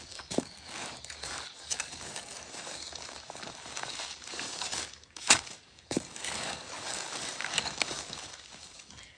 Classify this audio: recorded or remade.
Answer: remade